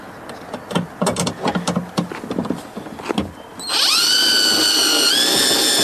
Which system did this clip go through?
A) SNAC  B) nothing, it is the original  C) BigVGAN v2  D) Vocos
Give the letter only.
B